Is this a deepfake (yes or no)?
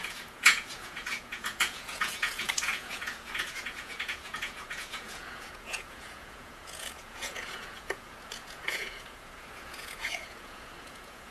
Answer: yes